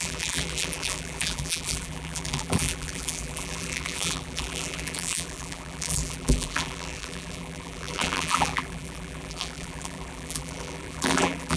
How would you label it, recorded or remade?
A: remade